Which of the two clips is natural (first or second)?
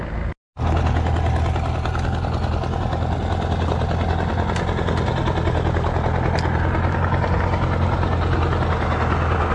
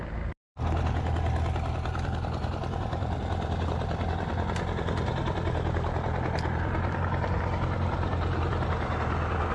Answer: first